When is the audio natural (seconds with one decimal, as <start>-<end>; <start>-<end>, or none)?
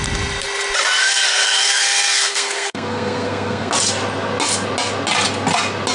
0.0-1.0; 3.7-5.9